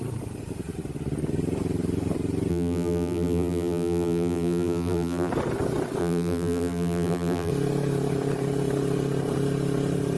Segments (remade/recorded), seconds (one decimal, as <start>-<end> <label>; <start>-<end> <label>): 0.0-2.5 recorded; 2.5-5.3 remade; 5.3-6.0 recorded; 6.0-7.5 remade; 7.5-10.2 recorded